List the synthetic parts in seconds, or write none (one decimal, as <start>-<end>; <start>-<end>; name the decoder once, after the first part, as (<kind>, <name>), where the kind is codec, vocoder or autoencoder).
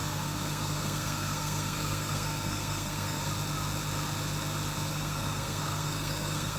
0.0-3.2 (codec, SNAC); 4.9-6.6